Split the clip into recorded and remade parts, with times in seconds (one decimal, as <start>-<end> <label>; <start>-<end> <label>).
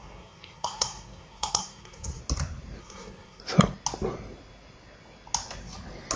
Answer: 0.0-2.2 remade; 2.2-2.8 recorded; 2.8-3.4 remade; 3.4-6.2 recorded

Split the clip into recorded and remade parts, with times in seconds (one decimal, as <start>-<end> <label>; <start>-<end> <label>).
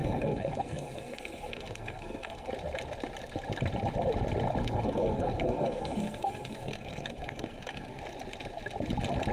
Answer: 0.0-2.5 remade; 2.5-4.6 recorded; 4.6-8.0 remade; 8.0-9.3 recorded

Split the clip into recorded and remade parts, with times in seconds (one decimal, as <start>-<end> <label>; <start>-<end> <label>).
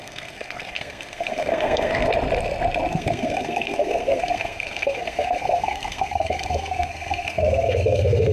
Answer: 0.0-2.1 remade; 2.1-2.9 recorded; 2.9-8.3 remade